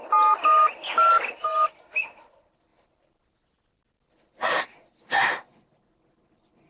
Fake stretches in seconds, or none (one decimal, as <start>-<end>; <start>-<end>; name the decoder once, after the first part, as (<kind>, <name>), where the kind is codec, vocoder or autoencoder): none